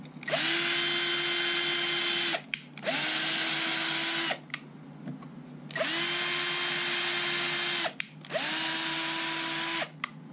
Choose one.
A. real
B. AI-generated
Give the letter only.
A